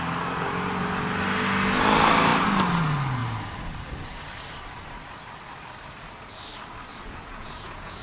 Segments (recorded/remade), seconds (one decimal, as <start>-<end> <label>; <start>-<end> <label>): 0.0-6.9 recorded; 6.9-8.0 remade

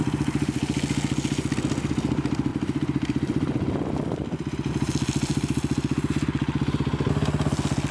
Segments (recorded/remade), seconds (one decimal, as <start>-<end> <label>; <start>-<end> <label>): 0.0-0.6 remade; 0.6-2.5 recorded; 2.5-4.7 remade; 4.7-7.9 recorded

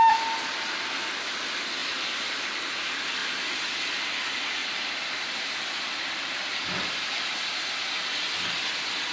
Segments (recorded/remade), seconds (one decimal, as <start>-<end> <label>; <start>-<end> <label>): 0.0-1.8 recorded; 1.8-2.4 remade; 2.4-4.6 recorded; 4.6-6.4 remade; 6.4-9.1 recorded